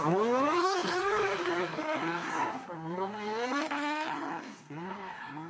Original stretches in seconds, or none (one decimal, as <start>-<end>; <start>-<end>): none

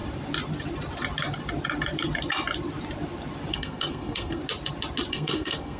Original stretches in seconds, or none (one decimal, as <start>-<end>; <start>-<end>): 0.0-3.5; 4.4-5.1

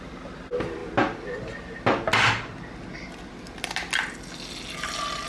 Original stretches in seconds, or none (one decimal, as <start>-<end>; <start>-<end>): 0.0-5.3

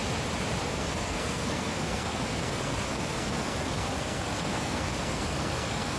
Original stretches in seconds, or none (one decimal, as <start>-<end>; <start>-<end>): 0.0-0.6

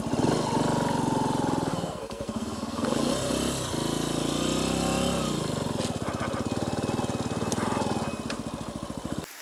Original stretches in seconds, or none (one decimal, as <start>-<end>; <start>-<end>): 0.0-1.7; 3.1-9.4